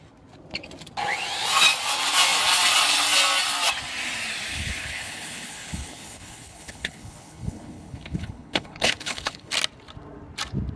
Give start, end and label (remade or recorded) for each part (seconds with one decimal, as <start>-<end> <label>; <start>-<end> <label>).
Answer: 0.0-4.5 recorded; 4.5-9.5 remade; 9.5-10.8 recorded

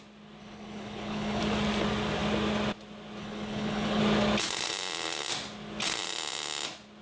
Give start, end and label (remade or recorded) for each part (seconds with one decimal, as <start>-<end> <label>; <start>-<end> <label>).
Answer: 0.0-0.4 recorded; 0.4-1.4 remade; 1.4-3.2 recorded; 3.2-4.0 remade; 4.0-7.0 recorded

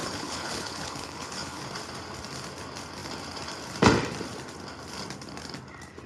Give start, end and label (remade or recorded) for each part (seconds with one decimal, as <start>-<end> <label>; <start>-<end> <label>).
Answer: 0.0-1.6 remade; 1.6-6.1 recorded

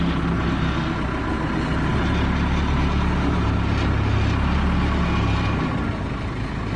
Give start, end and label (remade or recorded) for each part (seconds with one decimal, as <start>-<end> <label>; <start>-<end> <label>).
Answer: 0.0-6.8 recorded

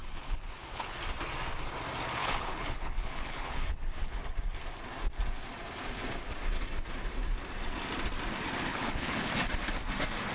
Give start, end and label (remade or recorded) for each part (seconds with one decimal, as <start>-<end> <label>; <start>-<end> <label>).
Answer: 0.0-1.0 remade; 1.0-2.2 recorded; 2.2-4.2 remade; 4.2-8.7 recorded; 8.7-9.3 remade; 9.3-10.3 recorded

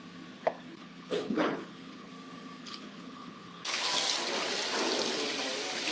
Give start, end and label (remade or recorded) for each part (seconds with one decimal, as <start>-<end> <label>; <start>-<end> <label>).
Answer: 0.0-0.4 recorded; 0.4-2.1 remade; 2.1-2.6 recorded; 2.6-3.9 remade; 3.9-5.9 recorded